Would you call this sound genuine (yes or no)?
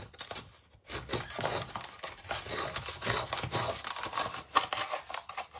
yes